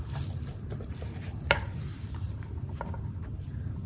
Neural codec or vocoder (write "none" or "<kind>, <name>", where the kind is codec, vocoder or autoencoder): vocoder, BigVGAN v2